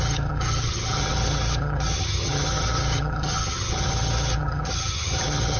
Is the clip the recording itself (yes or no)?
no